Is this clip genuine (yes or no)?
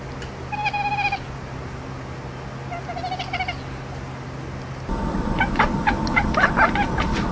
yes